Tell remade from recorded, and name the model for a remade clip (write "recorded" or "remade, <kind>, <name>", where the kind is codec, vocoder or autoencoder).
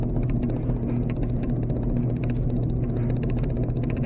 recorded